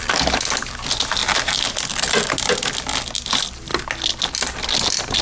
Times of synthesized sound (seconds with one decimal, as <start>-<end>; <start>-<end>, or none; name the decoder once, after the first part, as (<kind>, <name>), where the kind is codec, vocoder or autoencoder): none